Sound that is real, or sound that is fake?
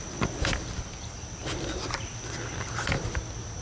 fake